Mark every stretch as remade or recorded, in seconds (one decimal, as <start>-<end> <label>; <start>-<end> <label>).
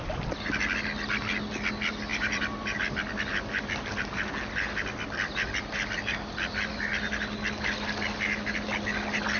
0.0-2.1 recorded; 2.1-2.8 remade; 2.8-9.4 recorded